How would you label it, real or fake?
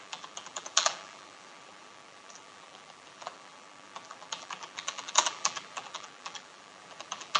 fake